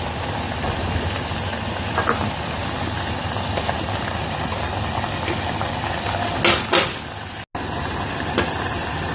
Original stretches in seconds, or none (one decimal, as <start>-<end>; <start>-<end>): 0.0-9.1